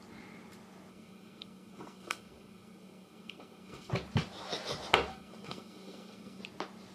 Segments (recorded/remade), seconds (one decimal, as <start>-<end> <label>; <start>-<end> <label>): 0.0-0.9 recorded; 0.9-3.9 remade; 3.9-5.1 recorded; 5.1-6.4 remade; 6.4-6.9 recorded